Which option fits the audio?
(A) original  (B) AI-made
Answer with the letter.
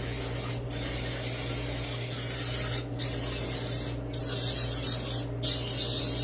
A